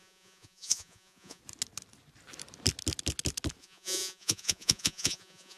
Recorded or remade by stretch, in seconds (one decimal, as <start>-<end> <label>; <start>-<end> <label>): 0.0-1.4 remade; 1.4-3.6 recorded; 3.6-5.6 remade